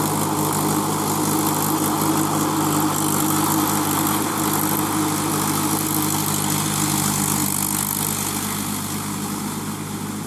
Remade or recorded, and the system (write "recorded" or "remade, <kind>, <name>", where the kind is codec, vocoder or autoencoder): recorded